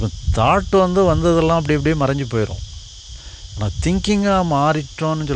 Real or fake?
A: real